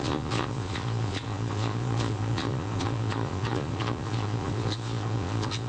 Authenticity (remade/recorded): remade